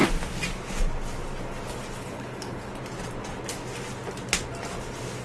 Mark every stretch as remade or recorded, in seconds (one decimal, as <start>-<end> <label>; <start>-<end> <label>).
0.0-2.0 recorded; 2.0-2.7 remade; 2.7-5.2 recorded

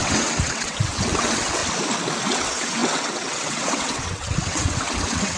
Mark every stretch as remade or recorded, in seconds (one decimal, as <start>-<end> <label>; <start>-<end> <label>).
0.0-1.6 remade; 1.6-2.2 recorded; 2.2-5.4 remade

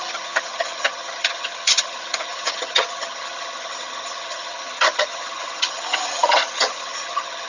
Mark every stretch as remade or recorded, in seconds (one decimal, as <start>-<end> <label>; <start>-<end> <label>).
0.0-7.5 remade

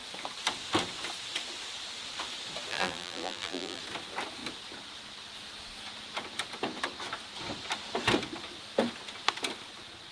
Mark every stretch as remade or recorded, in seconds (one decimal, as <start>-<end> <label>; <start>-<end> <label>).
0.0-2.7 recorded; 2.7-3.8 remade; 3.8-10.1 recorded

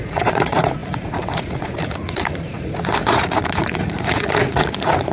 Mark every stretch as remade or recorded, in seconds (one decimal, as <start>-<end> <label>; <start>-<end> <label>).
0.0-5.1 remade

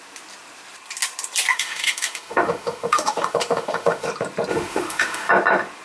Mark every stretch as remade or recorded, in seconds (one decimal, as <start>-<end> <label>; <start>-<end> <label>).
0.0-1.5 recorded; 1.5-4.1 remade; 4.1-4.5 recorded; 4.5-5.3 remade; 5.3-5.8 recorded

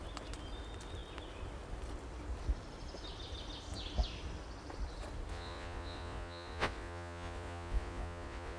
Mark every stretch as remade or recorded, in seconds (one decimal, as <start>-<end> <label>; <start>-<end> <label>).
0.0-5.3 recorded; 5.3-8.6 remade

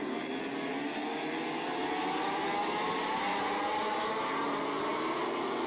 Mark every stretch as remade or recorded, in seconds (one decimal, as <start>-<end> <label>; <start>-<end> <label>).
0.0-5.7 recorded